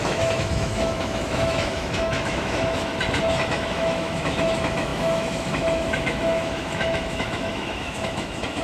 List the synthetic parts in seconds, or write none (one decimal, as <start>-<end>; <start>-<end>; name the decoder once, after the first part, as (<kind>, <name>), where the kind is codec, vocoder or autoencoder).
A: 0.0-2.9 (autoencoder, DAC-VAE); 3.5-8.6